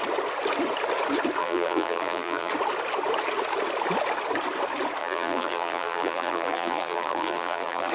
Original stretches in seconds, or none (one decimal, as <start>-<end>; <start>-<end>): 0.0-1.4; 2.5-5.0